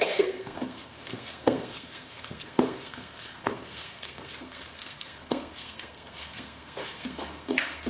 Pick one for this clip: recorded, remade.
remade